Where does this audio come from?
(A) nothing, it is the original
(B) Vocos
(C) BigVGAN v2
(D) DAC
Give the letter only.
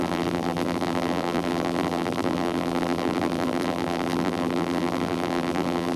C